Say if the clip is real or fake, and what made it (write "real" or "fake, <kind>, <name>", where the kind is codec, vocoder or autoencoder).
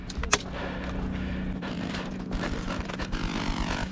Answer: real